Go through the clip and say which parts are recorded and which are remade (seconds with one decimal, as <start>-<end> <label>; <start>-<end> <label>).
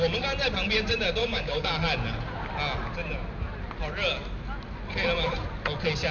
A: 0.0-1.2 recorded; 1.2-1.7 remade; 1.7-6.1 recorded